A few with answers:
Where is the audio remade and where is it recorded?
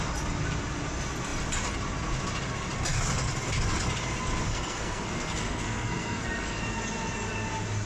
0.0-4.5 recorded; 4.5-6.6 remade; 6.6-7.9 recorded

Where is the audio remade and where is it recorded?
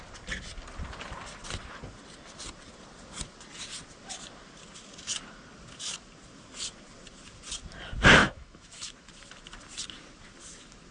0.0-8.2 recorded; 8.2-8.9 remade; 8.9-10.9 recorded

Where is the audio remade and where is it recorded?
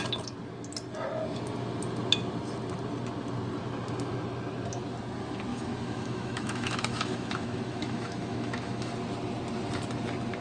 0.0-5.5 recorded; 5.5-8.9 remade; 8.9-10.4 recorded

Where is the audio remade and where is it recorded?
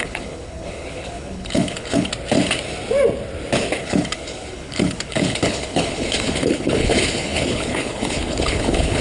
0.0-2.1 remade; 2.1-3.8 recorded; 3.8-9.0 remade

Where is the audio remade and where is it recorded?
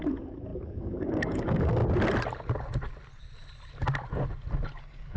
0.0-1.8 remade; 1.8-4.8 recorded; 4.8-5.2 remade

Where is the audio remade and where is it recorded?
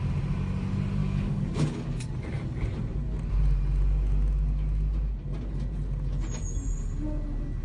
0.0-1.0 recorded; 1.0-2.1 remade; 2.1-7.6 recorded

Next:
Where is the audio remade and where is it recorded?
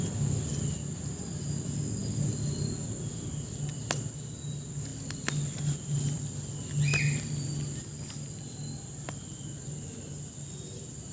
0.0-2.0 recorded; 2.0-3.0 remade; 3.0-4.9 recorded; 4.9-9.6 remade; 9.6-11.1 recorded